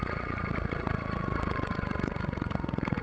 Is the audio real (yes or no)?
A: no